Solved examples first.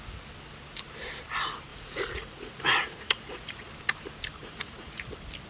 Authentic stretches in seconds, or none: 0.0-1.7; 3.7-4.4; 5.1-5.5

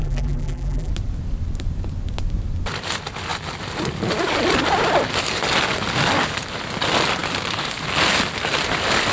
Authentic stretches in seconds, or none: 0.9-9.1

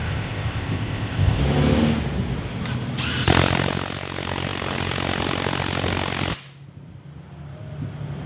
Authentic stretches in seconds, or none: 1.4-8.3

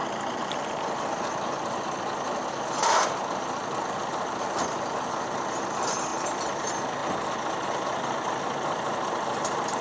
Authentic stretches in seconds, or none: 0.0-9.8